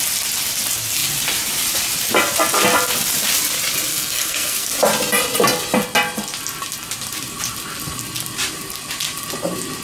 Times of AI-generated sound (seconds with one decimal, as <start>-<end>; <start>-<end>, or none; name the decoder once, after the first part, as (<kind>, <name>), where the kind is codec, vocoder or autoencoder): 3.9-4.7 (codec, SNAC)